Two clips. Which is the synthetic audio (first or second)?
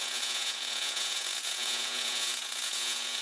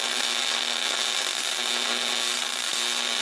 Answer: first